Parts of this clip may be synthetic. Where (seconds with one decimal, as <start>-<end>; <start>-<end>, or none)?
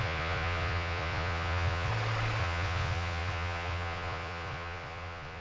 0.0-1.9; 2.4-5.4